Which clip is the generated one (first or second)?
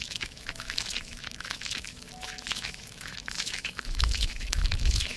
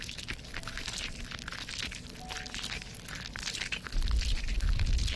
first